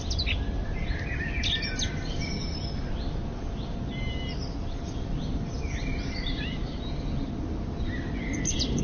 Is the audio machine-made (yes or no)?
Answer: no